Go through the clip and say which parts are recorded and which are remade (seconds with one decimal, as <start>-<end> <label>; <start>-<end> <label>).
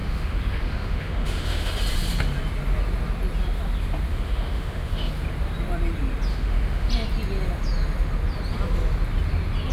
0.0-1.7 remade; 1.7-4.1 recorded; 4.1-5.1 remade; 5.1-6.3 recorded; 6.3-6.9 remade; 6.9-9.7 recorded